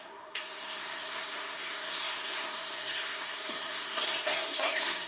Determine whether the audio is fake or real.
fake